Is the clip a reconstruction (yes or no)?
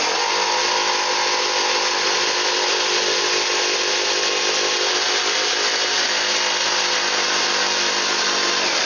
no